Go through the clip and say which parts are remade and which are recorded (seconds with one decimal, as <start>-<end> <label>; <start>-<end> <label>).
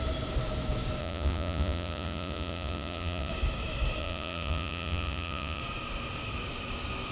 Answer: 0.0-1.0 recorded; 1.0-3.3 remade; 3.3-4.0 recorded; 4.0-5.6 remade; 5.6-7.1 recorded